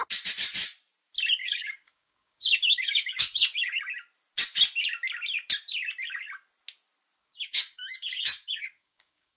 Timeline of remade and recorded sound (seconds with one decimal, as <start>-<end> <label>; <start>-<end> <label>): 0.0-1.4 recorded; 1.4-3.8 remade; 3.8-7.2 recorded; 7.2-9.4 remade